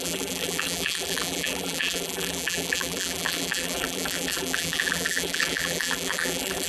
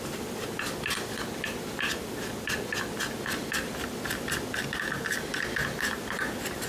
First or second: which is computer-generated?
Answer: first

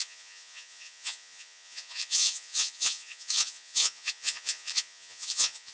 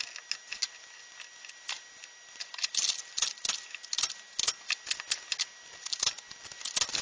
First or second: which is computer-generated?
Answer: first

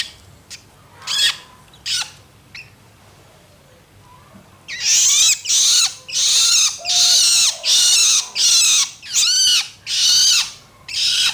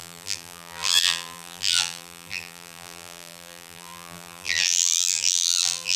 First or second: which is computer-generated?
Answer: second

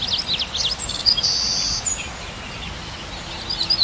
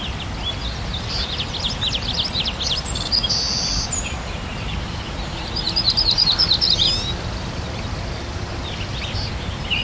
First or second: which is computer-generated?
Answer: second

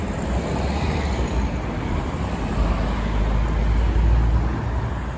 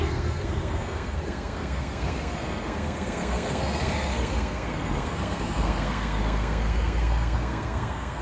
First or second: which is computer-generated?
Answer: second